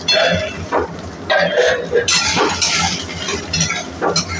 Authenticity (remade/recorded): remade